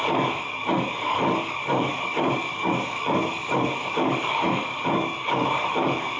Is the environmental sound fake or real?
fake